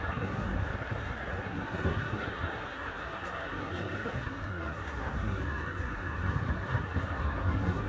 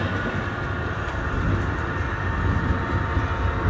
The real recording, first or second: second